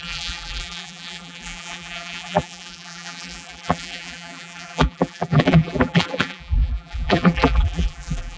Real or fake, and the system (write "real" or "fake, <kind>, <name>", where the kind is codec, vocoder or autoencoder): fake, vocoder, BigVGAN v2